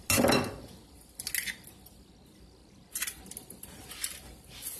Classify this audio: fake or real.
real